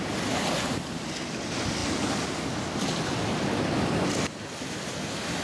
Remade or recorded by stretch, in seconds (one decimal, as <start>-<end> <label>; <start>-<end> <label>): 0.0-5.4 recorded